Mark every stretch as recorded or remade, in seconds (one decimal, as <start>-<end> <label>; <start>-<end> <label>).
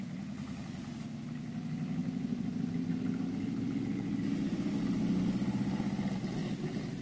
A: 0.0-7.0 recorded